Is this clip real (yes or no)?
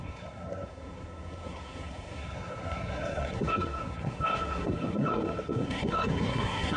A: no